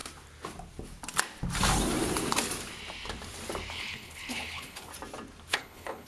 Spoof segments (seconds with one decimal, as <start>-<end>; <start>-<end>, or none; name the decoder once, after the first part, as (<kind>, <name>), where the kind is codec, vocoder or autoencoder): 3.7-4.9 (codec, HILCodec); 5.5-6.1